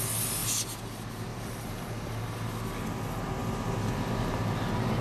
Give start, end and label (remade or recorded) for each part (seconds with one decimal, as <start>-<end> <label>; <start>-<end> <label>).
0.0-1.3 recorded; 1.3-2.1 remade; 2.1-3.4 recorded; 3.4-4.4 remade; 4.4-5.0 recorded